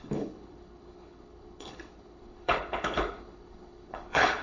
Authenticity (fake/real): fake